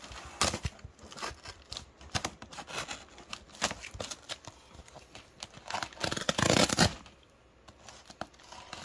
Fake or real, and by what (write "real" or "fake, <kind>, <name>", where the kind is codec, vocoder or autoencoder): real